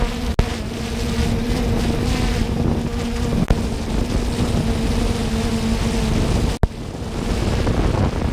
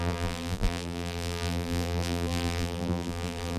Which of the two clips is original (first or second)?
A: first